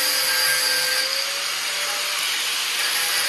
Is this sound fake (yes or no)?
no